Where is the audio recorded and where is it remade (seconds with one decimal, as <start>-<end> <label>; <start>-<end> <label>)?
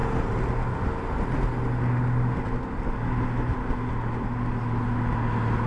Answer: 0.0-5.7 recorded